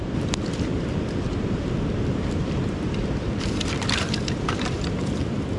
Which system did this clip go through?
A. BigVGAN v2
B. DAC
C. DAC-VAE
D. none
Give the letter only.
A